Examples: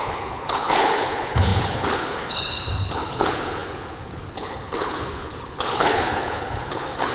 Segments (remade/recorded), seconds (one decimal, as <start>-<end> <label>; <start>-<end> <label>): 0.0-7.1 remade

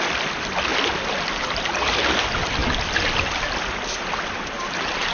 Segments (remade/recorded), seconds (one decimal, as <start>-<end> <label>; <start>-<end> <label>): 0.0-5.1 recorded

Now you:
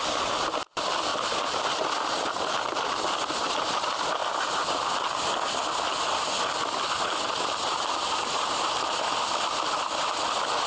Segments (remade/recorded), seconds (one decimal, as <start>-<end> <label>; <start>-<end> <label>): 0.0-10.7 recorded

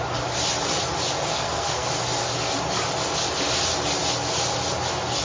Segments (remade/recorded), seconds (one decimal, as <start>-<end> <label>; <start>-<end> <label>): 0.0-1.3 recorded; 1.3-1.9 remade; 1.9-5.2 recorded